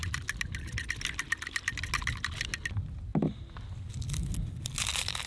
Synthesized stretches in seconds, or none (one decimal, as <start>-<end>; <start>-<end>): none

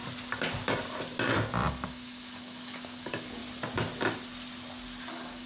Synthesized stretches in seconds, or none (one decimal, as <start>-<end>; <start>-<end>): 1.7-3.4; 5.1-5.5

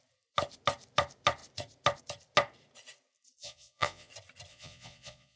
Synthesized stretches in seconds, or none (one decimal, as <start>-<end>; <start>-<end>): 3.4-4.1; 4.5-5.4

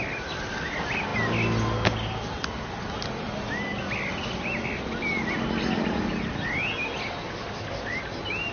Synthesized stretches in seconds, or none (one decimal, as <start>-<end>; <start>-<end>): none